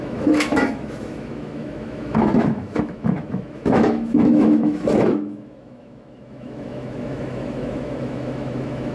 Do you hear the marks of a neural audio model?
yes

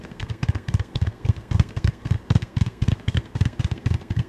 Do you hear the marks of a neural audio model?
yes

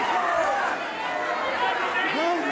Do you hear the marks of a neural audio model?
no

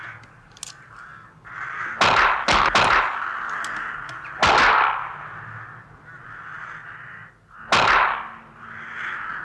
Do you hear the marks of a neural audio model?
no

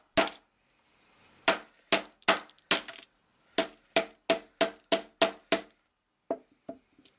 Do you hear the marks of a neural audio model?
no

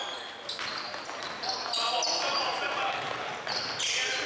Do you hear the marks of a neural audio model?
no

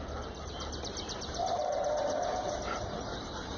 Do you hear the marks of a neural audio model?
no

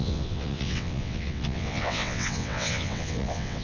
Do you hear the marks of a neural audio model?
yes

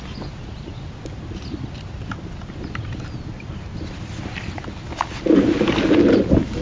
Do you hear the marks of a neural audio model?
no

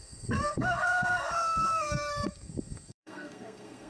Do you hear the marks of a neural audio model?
yes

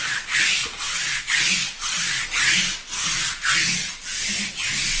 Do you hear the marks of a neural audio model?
no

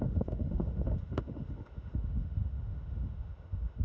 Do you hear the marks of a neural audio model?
yes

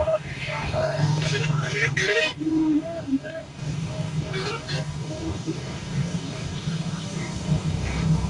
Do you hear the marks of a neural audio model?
yes